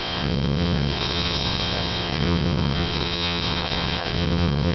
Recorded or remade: remade